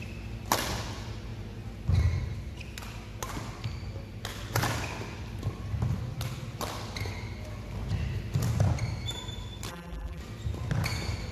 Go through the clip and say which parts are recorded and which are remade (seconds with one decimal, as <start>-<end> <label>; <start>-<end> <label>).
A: 0.0-9.7 recorded; 9.7-10.2 remade; 10.2-11.3 recorded